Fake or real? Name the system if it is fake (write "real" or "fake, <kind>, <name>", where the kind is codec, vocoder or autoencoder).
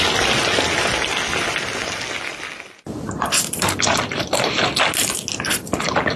real